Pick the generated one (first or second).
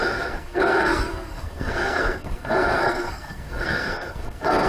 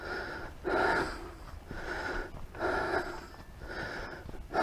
first